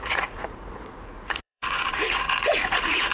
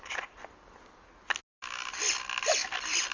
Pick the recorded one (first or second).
second